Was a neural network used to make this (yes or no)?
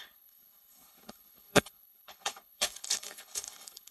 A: yes